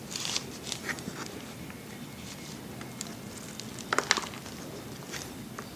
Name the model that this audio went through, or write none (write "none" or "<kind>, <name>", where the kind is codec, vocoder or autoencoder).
none